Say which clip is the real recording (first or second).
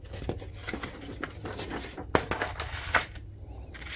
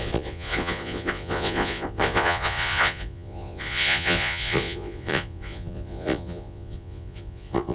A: first